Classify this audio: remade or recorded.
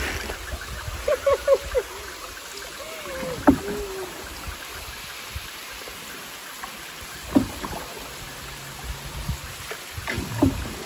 recorded